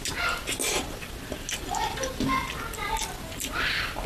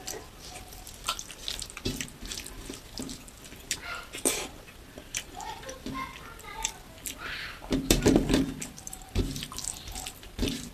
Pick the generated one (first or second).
second